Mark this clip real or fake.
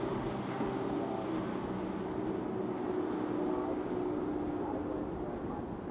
real